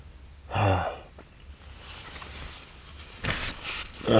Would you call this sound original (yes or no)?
yes